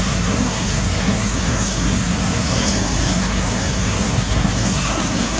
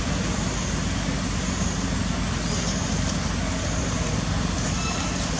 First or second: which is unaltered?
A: second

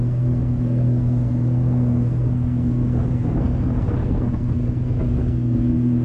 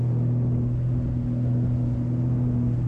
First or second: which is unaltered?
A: second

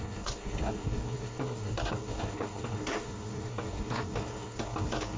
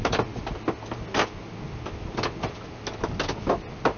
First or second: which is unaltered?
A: second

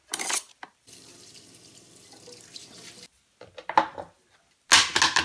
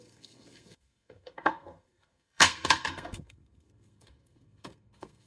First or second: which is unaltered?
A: first